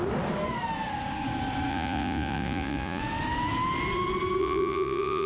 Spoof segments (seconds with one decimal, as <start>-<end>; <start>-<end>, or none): 1.7-3.0; 4.4-5.3